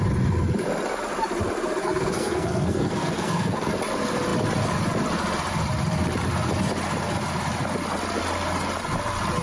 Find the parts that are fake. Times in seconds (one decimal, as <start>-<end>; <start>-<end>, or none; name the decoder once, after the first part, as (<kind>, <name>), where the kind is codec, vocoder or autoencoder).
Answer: 1.8-3.7 (codec, SNAC)